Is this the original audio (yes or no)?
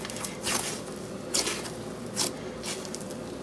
yes